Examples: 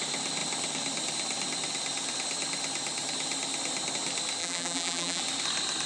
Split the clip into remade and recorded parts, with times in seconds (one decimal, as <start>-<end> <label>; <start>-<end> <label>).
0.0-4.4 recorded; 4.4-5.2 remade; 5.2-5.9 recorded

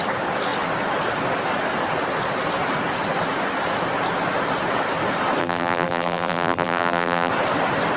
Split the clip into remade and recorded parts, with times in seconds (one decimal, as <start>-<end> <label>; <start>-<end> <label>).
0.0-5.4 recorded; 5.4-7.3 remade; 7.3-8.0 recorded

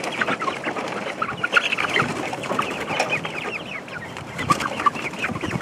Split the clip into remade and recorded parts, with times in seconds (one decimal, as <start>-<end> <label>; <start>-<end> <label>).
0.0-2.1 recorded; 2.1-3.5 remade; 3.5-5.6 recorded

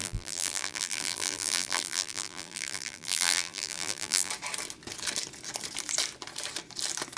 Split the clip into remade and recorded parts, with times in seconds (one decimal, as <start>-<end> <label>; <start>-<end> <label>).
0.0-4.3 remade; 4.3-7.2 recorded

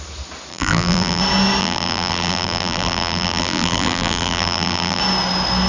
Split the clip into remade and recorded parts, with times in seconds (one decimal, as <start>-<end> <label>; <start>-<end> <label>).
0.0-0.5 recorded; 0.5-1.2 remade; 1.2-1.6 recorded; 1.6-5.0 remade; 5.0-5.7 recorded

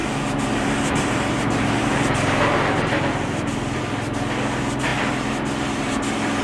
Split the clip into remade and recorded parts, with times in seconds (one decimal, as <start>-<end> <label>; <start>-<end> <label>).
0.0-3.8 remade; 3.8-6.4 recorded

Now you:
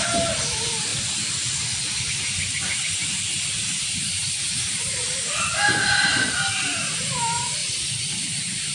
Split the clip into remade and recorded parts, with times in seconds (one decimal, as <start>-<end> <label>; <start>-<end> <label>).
0.0-0.9 remade; 0.9-1.8 recorded; 1.8-7.6 remade; 7.6-8.2 recorded; 8.2-8.7 remade

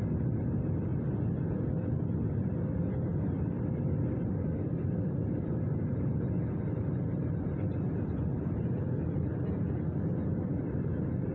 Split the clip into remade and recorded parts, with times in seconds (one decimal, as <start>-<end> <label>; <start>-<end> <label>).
0.0-0.9 remade; 0.9-2.4 recorded; 2.4-11.3 remade